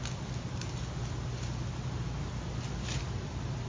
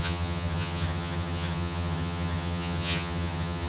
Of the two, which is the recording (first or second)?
first